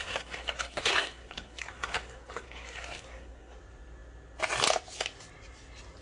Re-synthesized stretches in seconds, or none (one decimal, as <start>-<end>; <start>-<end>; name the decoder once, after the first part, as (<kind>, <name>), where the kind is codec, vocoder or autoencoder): 0.0-3.6 (codec, SNAC)